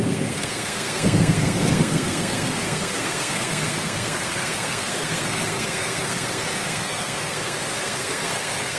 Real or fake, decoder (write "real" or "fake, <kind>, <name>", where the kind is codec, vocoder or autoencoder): fake, codec, SNAC